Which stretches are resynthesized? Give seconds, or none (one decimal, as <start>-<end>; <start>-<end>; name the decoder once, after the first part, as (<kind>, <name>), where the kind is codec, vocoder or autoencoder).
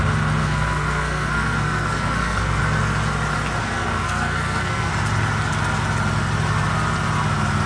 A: 0.4-2.6 (codec, SNAC); 3.6-4.9